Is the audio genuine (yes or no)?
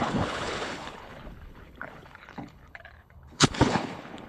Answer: no